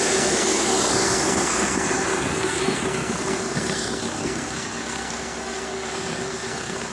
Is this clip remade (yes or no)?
yes